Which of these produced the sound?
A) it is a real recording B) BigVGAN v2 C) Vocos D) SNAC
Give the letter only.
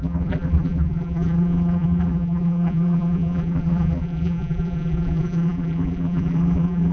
B